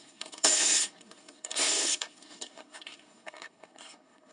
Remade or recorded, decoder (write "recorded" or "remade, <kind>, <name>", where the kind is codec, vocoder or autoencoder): remade, codec, SNAC